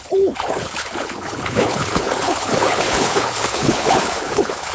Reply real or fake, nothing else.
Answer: fake